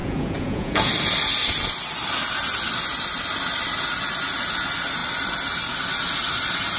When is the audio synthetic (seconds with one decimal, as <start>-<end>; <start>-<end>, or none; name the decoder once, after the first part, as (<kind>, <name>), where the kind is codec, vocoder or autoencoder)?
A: 0.0-0.9 (vocoder, Vocos)